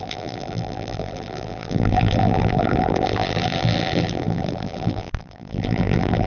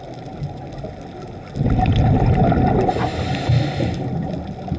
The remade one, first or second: first